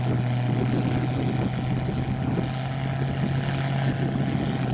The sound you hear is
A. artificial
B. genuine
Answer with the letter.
B